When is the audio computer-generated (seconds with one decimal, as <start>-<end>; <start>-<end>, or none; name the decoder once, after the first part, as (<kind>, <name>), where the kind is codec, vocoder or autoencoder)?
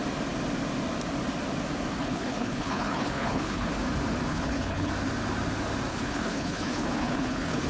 2.0-3.7 (codec, HILCodec); 4.3-4.9; 5.9-7.7